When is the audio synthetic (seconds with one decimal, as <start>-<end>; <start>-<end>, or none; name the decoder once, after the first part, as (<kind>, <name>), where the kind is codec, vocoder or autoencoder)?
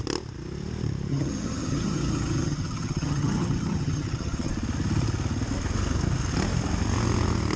1.1-4.5 (vocoder, HiFi-GAN)